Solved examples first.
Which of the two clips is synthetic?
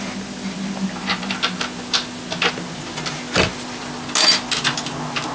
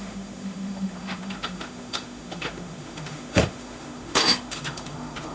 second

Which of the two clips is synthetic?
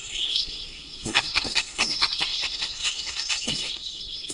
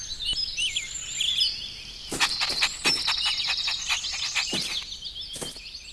first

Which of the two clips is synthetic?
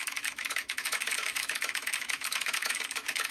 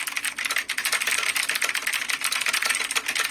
first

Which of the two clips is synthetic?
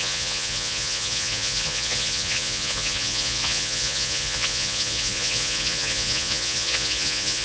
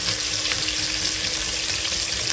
first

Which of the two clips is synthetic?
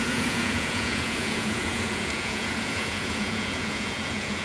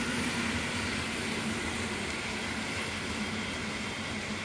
first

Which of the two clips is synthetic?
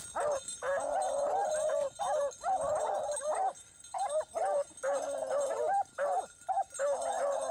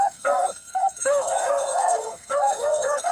second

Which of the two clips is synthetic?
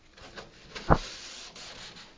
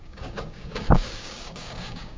second